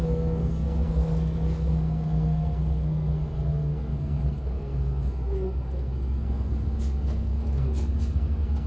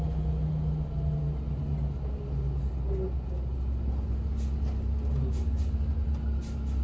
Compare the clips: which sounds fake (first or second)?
first